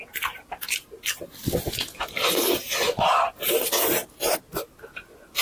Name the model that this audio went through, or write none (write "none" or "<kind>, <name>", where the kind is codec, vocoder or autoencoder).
none